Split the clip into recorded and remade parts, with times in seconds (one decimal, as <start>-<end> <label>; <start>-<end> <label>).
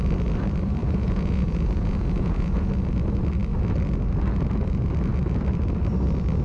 0.0-0.8 recorded; 0.8-2.7 remade; 2.7-6.4 recorded